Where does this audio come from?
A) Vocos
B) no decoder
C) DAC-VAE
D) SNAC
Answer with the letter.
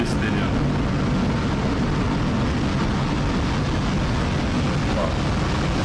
B